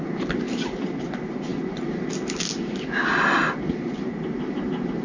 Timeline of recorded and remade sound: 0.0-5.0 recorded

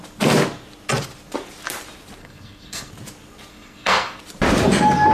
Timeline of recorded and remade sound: 0.0-2.2 recorded; 2.2-2.9 remade; 2.9-3.5 recorded; 3.5-4.2 remade; 4.2-5.1 recorded

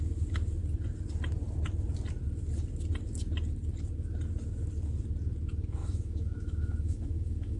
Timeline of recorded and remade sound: 0.0-5.8 recorded; 5.8-7.6 remade